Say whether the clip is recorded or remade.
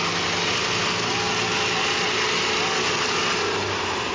recorded